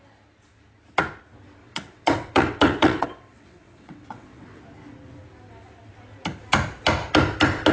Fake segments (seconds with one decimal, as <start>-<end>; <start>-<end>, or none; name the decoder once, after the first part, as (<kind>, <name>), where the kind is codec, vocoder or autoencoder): 1.6-4.6 (vocoder, WaveNeXt)